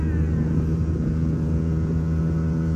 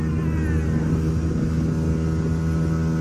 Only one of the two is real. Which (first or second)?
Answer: second